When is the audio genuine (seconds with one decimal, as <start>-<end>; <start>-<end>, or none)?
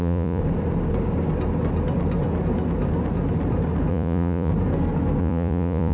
0.4-3.9; 4.5-5.2